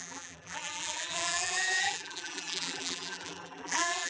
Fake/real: fake